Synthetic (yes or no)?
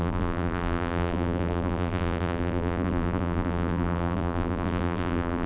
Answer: yes